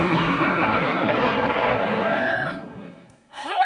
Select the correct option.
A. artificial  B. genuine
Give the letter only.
A